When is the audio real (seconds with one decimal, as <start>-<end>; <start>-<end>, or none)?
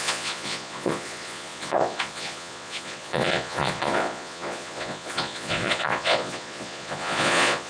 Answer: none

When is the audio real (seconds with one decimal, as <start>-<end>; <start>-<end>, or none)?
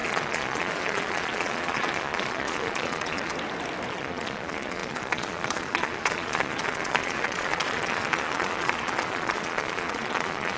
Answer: 3.3-3.9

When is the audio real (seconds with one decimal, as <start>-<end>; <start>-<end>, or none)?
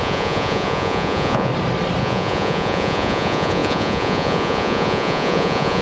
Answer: 1.5-2.0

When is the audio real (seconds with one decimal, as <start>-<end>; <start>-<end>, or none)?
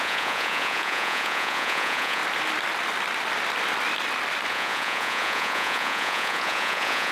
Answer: 2.2-4.5